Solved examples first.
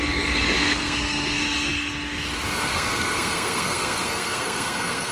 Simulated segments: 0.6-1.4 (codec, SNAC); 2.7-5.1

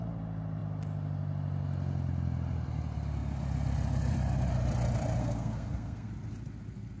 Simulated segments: 5.2-6.1 (codec, SNAC)

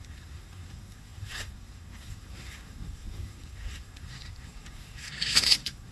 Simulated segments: 0.0-5.9 (codec, SNAC)

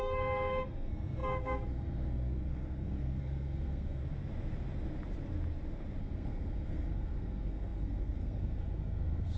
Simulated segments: 0.0-4.0 (codec, SNAC); 6.0-9.4